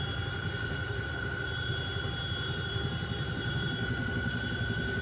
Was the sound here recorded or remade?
remade